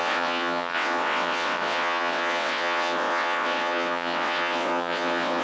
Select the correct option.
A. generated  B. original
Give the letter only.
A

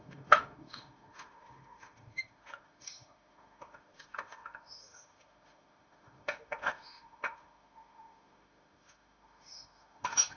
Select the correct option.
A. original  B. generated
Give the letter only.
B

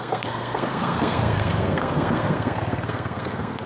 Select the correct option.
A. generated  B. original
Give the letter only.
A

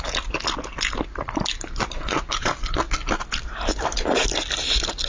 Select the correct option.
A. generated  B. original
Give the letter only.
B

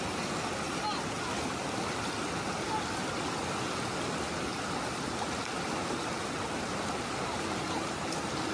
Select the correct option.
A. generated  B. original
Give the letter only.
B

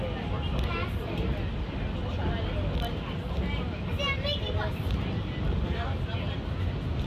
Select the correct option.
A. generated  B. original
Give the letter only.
B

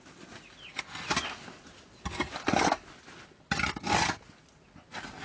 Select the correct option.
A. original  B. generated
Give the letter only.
A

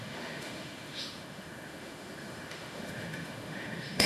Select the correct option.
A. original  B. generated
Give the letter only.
B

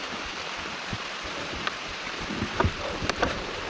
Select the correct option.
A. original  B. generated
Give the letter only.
B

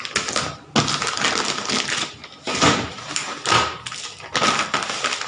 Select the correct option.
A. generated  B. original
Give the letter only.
B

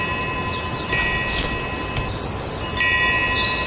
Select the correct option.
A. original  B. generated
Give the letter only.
A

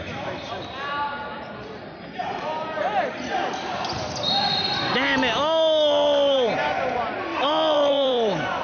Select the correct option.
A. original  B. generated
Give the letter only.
B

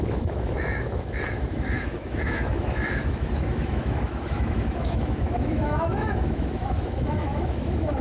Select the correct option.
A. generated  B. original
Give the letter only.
A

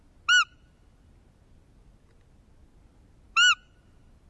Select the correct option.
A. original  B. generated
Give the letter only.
A